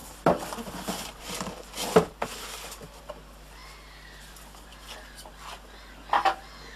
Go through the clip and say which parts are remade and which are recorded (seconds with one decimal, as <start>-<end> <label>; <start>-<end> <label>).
0.0-6.8 recorded